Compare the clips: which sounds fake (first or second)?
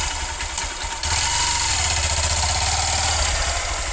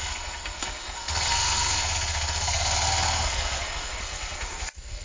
second